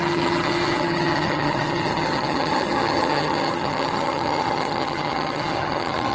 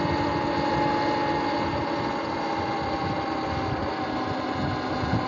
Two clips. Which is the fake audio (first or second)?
first